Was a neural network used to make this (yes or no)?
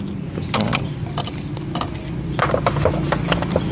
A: no